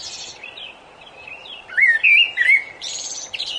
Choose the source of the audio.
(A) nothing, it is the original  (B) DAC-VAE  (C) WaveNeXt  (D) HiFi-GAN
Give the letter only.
A